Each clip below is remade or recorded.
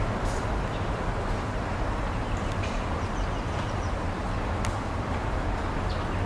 recorded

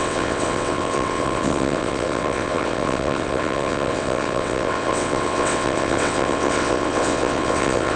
remade